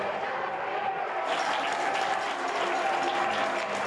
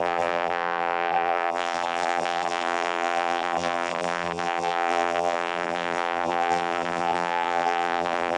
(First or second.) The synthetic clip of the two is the second